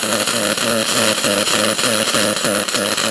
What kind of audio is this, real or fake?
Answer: real